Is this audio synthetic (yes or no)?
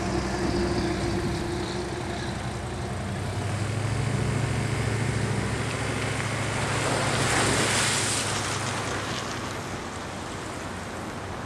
no